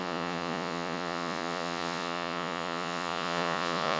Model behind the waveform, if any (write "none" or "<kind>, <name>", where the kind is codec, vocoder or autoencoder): vocoder, Vocos